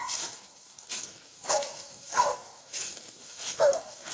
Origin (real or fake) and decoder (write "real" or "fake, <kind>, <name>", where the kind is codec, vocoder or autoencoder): fake, codec, DAC